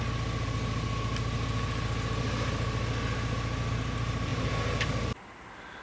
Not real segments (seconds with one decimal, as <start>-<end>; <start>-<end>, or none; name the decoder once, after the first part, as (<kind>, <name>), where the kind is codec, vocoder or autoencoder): none